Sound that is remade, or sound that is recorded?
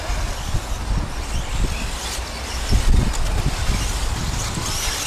recorded